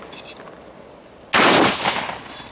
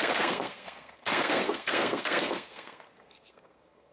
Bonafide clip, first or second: first